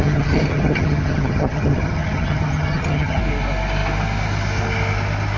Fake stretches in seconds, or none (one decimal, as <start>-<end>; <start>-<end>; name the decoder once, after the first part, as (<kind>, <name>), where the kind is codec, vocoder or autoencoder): 0.0-3.2 (vocoder, HiFi-GAN)